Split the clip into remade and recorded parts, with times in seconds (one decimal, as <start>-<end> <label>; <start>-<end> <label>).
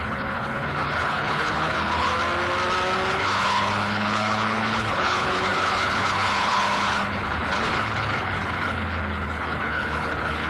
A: 0.0-2.1 remade; 2.1-3.1 recorded; 3.1-10.5 remade